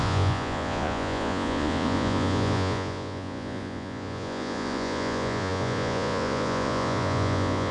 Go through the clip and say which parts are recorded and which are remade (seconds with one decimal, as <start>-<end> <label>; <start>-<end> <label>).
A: 0.0-7.7 remade